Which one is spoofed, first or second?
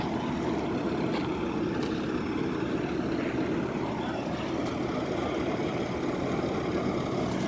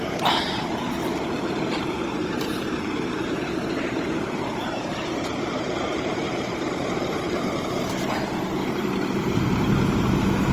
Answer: second